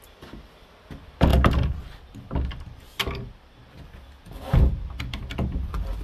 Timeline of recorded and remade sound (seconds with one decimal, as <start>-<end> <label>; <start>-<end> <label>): 0.0-6.0 recorded